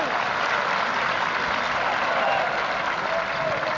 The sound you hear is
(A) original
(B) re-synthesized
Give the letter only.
A